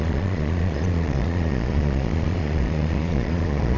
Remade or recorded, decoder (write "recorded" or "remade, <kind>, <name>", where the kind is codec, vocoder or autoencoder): remade, vocoder, Vocos